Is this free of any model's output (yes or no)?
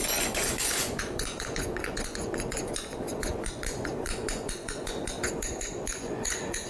no